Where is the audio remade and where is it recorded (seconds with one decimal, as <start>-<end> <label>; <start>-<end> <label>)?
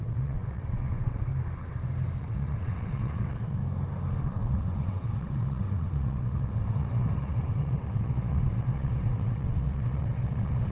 0.0-1.3 remade; 1.3-2.2 recorded; 2.2-3.6 remade; 3.6-4.2 recorded; 4.2-10.7 remade